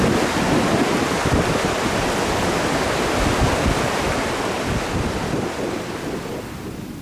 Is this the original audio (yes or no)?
yes